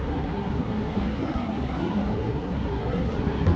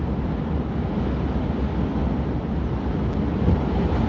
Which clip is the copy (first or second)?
first